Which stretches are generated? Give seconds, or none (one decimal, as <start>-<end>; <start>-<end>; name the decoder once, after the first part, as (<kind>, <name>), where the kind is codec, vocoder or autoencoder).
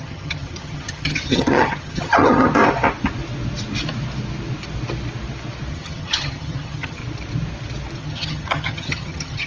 0.0-2.5 (vocoder, HiFi-GAN); 5.7-7.0; 8.0-9.5